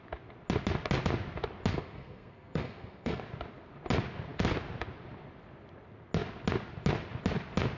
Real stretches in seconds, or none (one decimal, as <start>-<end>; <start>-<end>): 0.0-1.7; 3.2-7.8